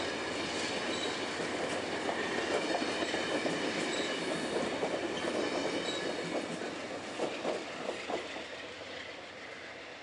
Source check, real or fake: real